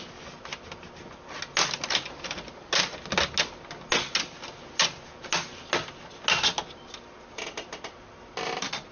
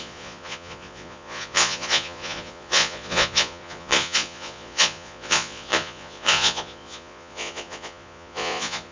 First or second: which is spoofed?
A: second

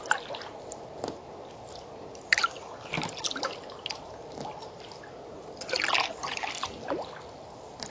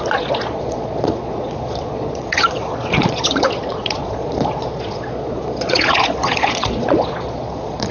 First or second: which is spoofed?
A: second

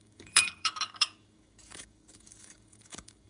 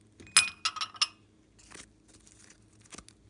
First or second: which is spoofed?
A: first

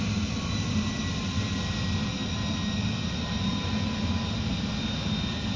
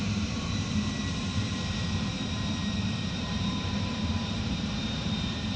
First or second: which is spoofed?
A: second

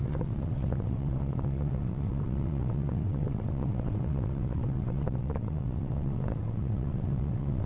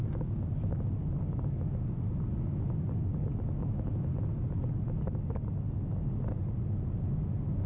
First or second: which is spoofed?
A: first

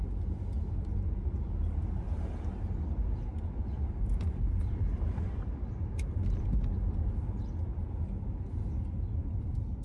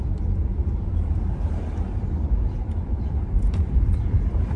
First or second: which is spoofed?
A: second